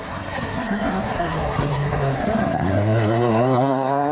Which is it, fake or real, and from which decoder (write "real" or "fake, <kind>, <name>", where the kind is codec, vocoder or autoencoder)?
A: fake, codec, SNAC